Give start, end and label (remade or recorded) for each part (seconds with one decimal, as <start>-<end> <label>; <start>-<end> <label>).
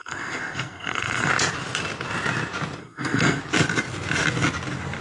0.0-1.3 remade; 1.3-2.8 recorded; 2.8-3.4 remade; 3.4-5.0 recorded